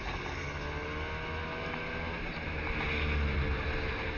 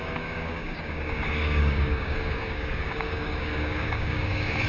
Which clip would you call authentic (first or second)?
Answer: first